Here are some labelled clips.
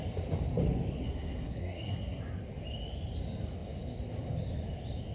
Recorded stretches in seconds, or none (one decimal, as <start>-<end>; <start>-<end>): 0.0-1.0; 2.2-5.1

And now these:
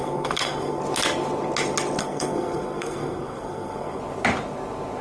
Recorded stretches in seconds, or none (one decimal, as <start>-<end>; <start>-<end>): 0.8-2.0; 4.0-5.0

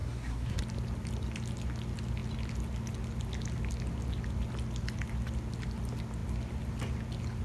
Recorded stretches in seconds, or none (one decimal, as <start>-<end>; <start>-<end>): 0.6-7.4